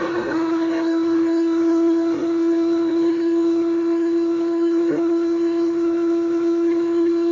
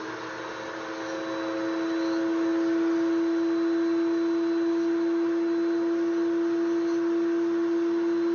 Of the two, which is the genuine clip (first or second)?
second